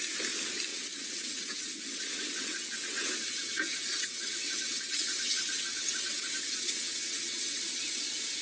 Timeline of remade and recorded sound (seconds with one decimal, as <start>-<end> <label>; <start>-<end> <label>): 0.0-0.7 recorded; 0.7-3.1 remade; 3.1-3.9 recorded; 3.9-7.6 remade; 7.6-8.4 recorded